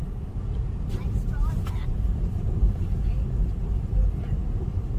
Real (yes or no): no